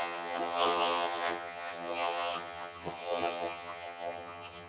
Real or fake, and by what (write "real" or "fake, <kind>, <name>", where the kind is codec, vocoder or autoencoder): fake, vocoder, HiFi-GAN